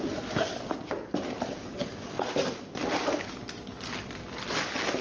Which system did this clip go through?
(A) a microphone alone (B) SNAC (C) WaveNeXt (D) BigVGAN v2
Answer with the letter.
A